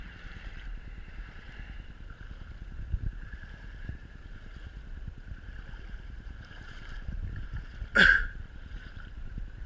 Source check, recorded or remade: remade